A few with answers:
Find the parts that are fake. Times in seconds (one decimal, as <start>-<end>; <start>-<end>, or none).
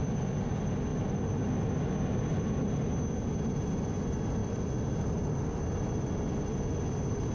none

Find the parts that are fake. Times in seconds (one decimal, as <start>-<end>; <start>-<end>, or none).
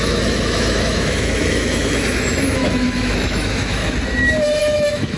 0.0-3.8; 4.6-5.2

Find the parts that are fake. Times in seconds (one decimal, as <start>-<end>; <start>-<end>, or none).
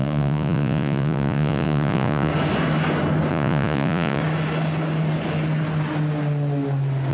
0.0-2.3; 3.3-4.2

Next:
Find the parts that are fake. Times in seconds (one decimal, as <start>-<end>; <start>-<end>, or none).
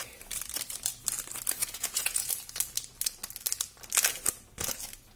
1.6-2.3